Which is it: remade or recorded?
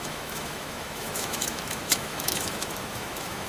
remade